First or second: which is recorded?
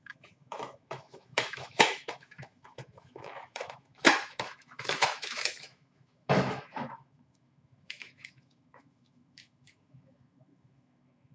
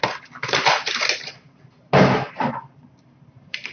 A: second